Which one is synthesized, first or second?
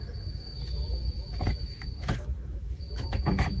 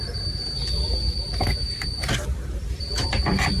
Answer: first